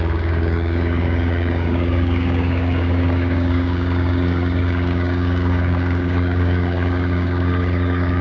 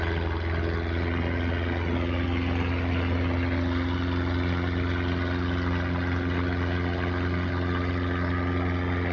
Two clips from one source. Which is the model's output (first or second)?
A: first